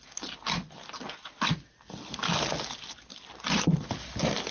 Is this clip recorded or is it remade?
recorded